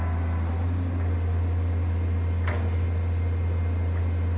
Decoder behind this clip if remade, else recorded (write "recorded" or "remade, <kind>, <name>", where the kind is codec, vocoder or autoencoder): recorded